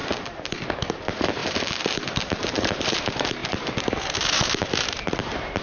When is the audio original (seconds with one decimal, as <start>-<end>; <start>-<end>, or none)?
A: 0.0-0.9